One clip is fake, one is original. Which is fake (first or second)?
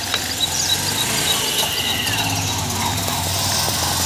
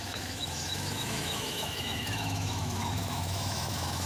second